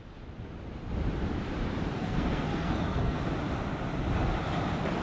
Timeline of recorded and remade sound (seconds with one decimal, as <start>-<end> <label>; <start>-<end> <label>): 0.0-2.0 recorded; 2.0-3.2 remade; 3.2-5.0 recorded